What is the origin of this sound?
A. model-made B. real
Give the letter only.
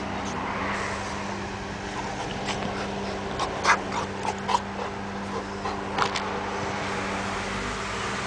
B